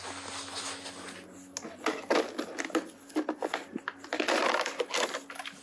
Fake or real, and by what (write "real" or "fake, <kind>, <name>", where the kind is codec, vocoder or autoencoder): real